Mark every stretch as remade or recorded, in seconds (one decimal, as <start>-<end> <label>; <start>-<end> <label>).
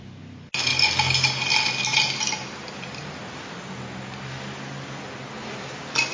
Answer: 0.0-6.1 recorded